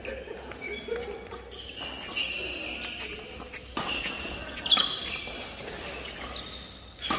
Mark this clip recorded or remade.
recorded